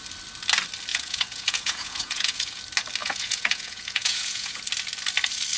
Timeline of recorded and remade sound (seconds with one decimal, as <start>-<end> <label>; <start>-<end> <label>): 0.0-0.9 recorded; 0.9-2.6 remade; 2.6-3.0 recorded; 3.0-4.6 remade; 4.6-5.6 recorded